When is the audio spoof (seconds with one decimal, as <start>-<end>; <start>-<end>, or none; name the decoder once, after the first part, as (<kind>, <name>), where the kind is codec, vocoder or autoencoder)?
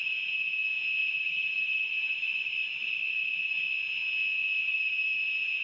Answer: 4.6-5.6 (vocoder, BigVGAN v2)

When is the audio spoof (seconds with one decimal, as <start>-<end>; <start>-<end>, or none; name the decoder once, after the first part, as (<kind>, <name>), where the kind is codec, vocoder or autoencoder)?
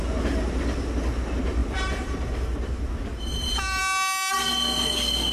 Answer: 1.6-3.8 (vocoder, BigVGAN v2)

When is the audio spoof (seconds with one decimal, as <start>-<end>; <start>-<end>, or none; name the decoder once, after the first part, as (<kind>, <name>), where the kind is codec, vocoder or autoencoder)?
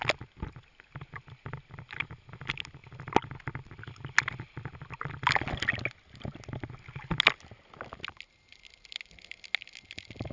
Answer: none